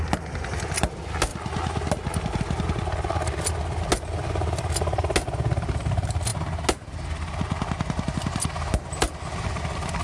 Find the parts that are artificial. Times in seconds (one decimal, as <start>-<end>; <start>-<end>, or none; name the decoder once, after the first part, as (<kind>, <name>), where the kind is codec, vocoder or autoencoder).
none